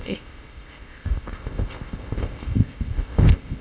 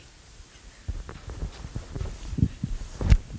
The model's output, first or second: first